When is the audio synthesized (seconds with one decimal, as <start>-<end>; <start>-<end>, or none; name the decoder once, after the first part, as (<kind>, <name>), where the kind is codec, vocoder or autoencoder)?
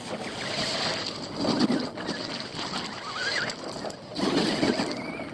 none